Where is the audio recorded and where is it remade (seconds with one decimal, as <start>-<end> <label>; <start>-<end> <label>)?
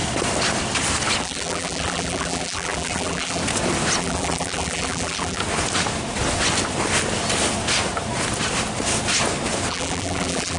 0.0-1.2 recorded; 1.2-3.4 remade; 3.4-4.0 recorded; 4.0-5.4 remade; 5.4-9.7 recorded; 9.7-10.6 remade